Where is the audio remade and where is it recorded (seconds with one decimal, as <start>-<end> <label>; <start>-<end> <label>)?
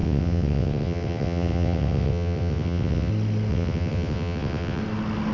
0.0-3.1 remade; 3.1-3.5 recorded; 3.5-4.8 remade; 4.8-5.3 recorded